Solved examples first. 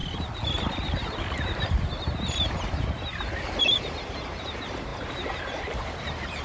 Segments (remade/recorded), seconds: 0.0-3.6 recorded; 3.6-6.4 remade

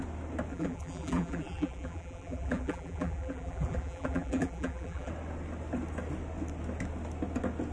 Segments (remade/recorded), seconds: 0.0-0.5 recorded; 0.5-5.1 remade; 5.1-7.7 recorded

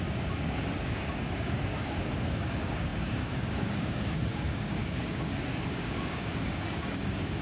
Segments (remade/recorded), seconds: 0.0-7.4 remade

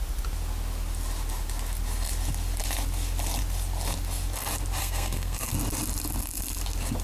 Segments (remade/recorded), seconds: 0.0-4.8 recorded; 4.8-5.5 remade; 5.5-7.0 recorded

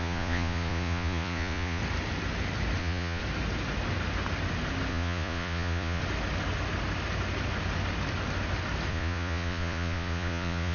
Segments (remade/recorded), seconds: 0.0-1.8 remade; 1.8-2.8 recorded; 2.8-3.2 remade; 3.2-4.9 recorded; 4.9-6.0 remade; 6.0-8.9 recorded; 8.9-10.7 remade

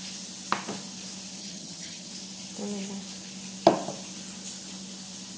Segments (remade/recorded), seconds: 0.0-1.4 recorded; 1.4-2.1 remade; 2.1-5.4 recorded

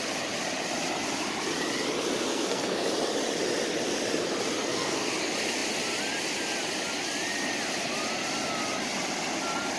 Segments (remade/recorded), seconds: 0.0-2.3 recorded; 2.3-2.9 remade; 2.9-4.6 recorded; 4.6-5.1 remade; 5.1-9.8 recorded